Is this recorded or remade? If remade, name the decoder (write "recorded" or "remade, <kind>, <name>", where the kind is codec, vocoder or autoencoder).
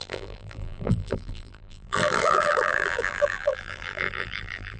remade, vocoder, BigVGAN v2